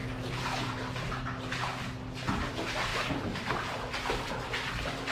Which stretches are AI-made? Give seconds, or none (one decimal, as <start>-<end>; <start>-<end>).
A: 2.9-4.3